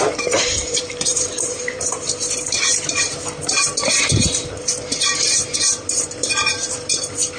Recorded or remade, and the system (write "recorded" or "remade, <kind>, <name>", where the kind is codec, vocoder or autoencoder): remade, vocoder, BigVGAN v2